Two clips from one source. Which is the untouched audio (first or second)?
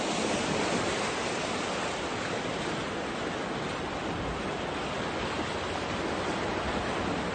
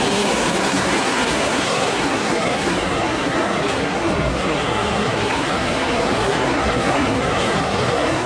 first